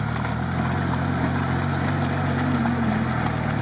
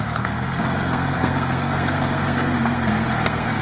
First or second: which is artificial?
second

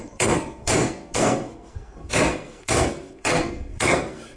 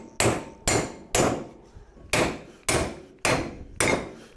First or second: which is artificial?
first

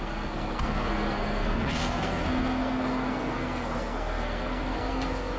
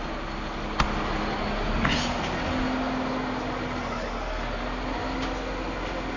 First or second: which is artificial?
first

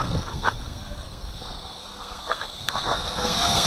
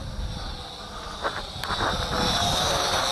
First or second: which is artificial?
first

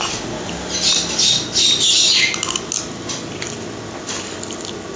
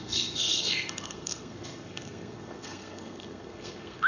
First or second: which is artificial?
second